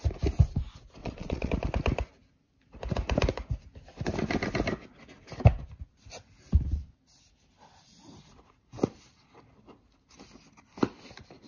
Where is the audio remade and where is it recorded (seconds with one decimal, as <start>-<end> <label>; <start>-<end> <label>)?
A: 0.0-1.0 recorded; 1.0-1.5 remade; 1.5-11.5 recorded